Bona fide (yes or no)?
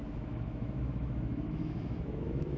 no